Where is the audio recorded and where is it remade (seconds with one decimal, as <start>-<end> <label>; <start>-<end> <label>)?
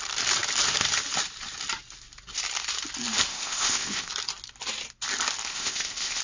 0.0-3.3 recorded; 3.3-4.1 remade; 4.1-5.5 recorded; 5.5-6.2 remade